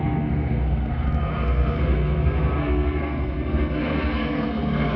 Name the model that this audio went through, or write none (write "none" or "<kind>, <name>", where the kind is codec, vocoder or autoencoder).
codec, SNAC